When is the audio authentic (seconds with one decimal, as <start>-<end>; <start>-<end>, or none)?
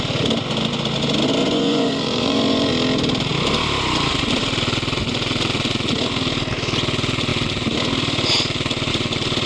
0.0-1.4; 2.7-9.5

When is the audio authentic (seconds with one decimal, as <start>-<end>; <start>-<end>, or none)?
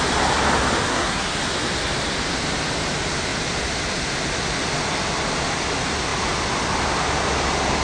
0.0-0.9; 1.4-7.8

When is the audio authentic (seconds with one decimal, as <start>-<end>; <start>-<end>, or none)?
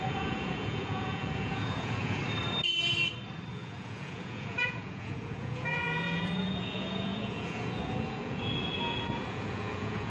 2.2-3.5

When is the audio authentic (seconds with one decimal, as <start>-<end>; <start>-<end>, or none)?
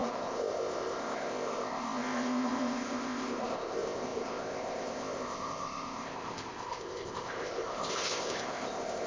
none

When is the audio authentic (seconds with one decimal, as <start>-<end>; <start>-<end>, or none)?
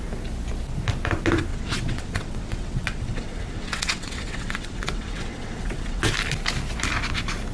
0.0-1.5; 6.0-7.5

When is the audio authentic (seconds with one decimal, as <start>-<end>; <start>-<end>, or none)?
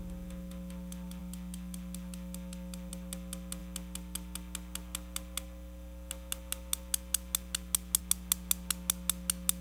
0.0-9.6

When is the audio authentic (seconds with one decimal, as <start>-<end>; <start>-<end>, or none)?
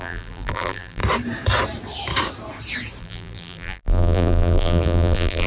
1.0-3.0